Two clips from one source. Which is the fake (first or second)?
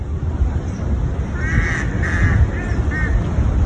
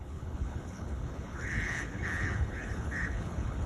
second